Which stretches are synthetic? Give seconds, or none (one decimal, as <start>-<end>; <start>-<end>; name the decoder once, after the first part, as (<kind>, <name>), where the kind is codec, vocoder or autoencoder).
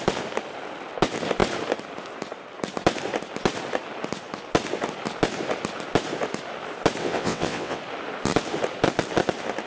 7.0-7.8 (vocoder, WaveNeXt)